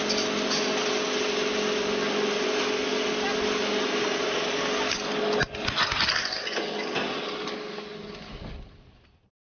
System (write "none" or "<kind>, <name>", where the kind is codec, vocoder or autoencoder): none